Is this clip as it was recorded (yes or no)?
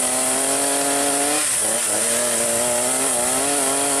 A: yes